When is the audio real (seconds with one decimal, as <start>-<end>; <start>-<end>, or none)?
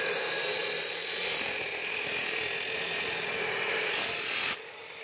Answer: 0.6-1.2; 1.7-5.0